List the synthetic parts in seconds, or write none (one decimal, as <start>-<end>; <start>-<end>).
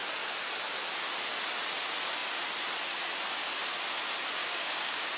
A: 4.4-5.2